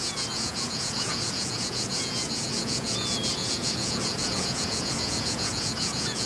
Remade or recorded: remade